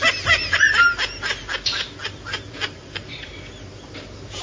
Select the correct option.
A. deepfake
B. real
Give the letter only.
B